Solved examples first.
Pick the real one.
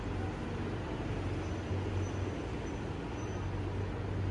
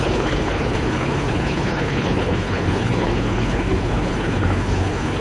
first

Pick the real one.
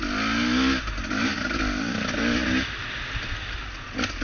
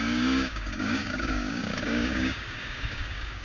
first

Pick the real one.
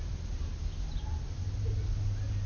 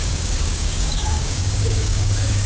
first